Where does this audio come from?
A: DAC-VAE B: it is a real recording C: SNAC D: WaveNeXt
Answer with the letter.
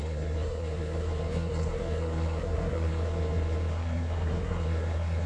C